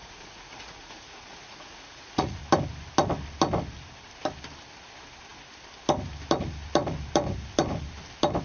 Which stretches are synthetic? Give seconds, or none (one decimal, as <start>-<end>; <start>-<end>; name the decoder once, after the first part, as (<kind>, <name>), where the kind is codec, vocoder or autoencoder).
0.0-2.4 (vocoder, Vocos)